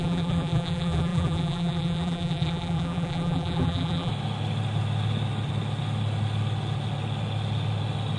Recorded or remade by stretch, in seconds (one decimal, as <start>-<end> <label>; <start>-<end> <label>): 0.0-4.1 remade; 4.1-8.2 recorded